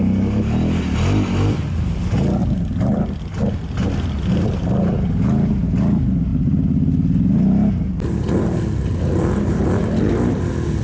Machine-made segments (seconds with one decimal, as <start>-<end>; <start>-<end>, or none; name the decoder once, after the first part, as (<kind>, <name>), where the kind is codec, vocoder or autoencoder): none